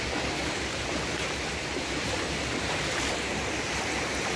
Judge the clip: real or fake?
real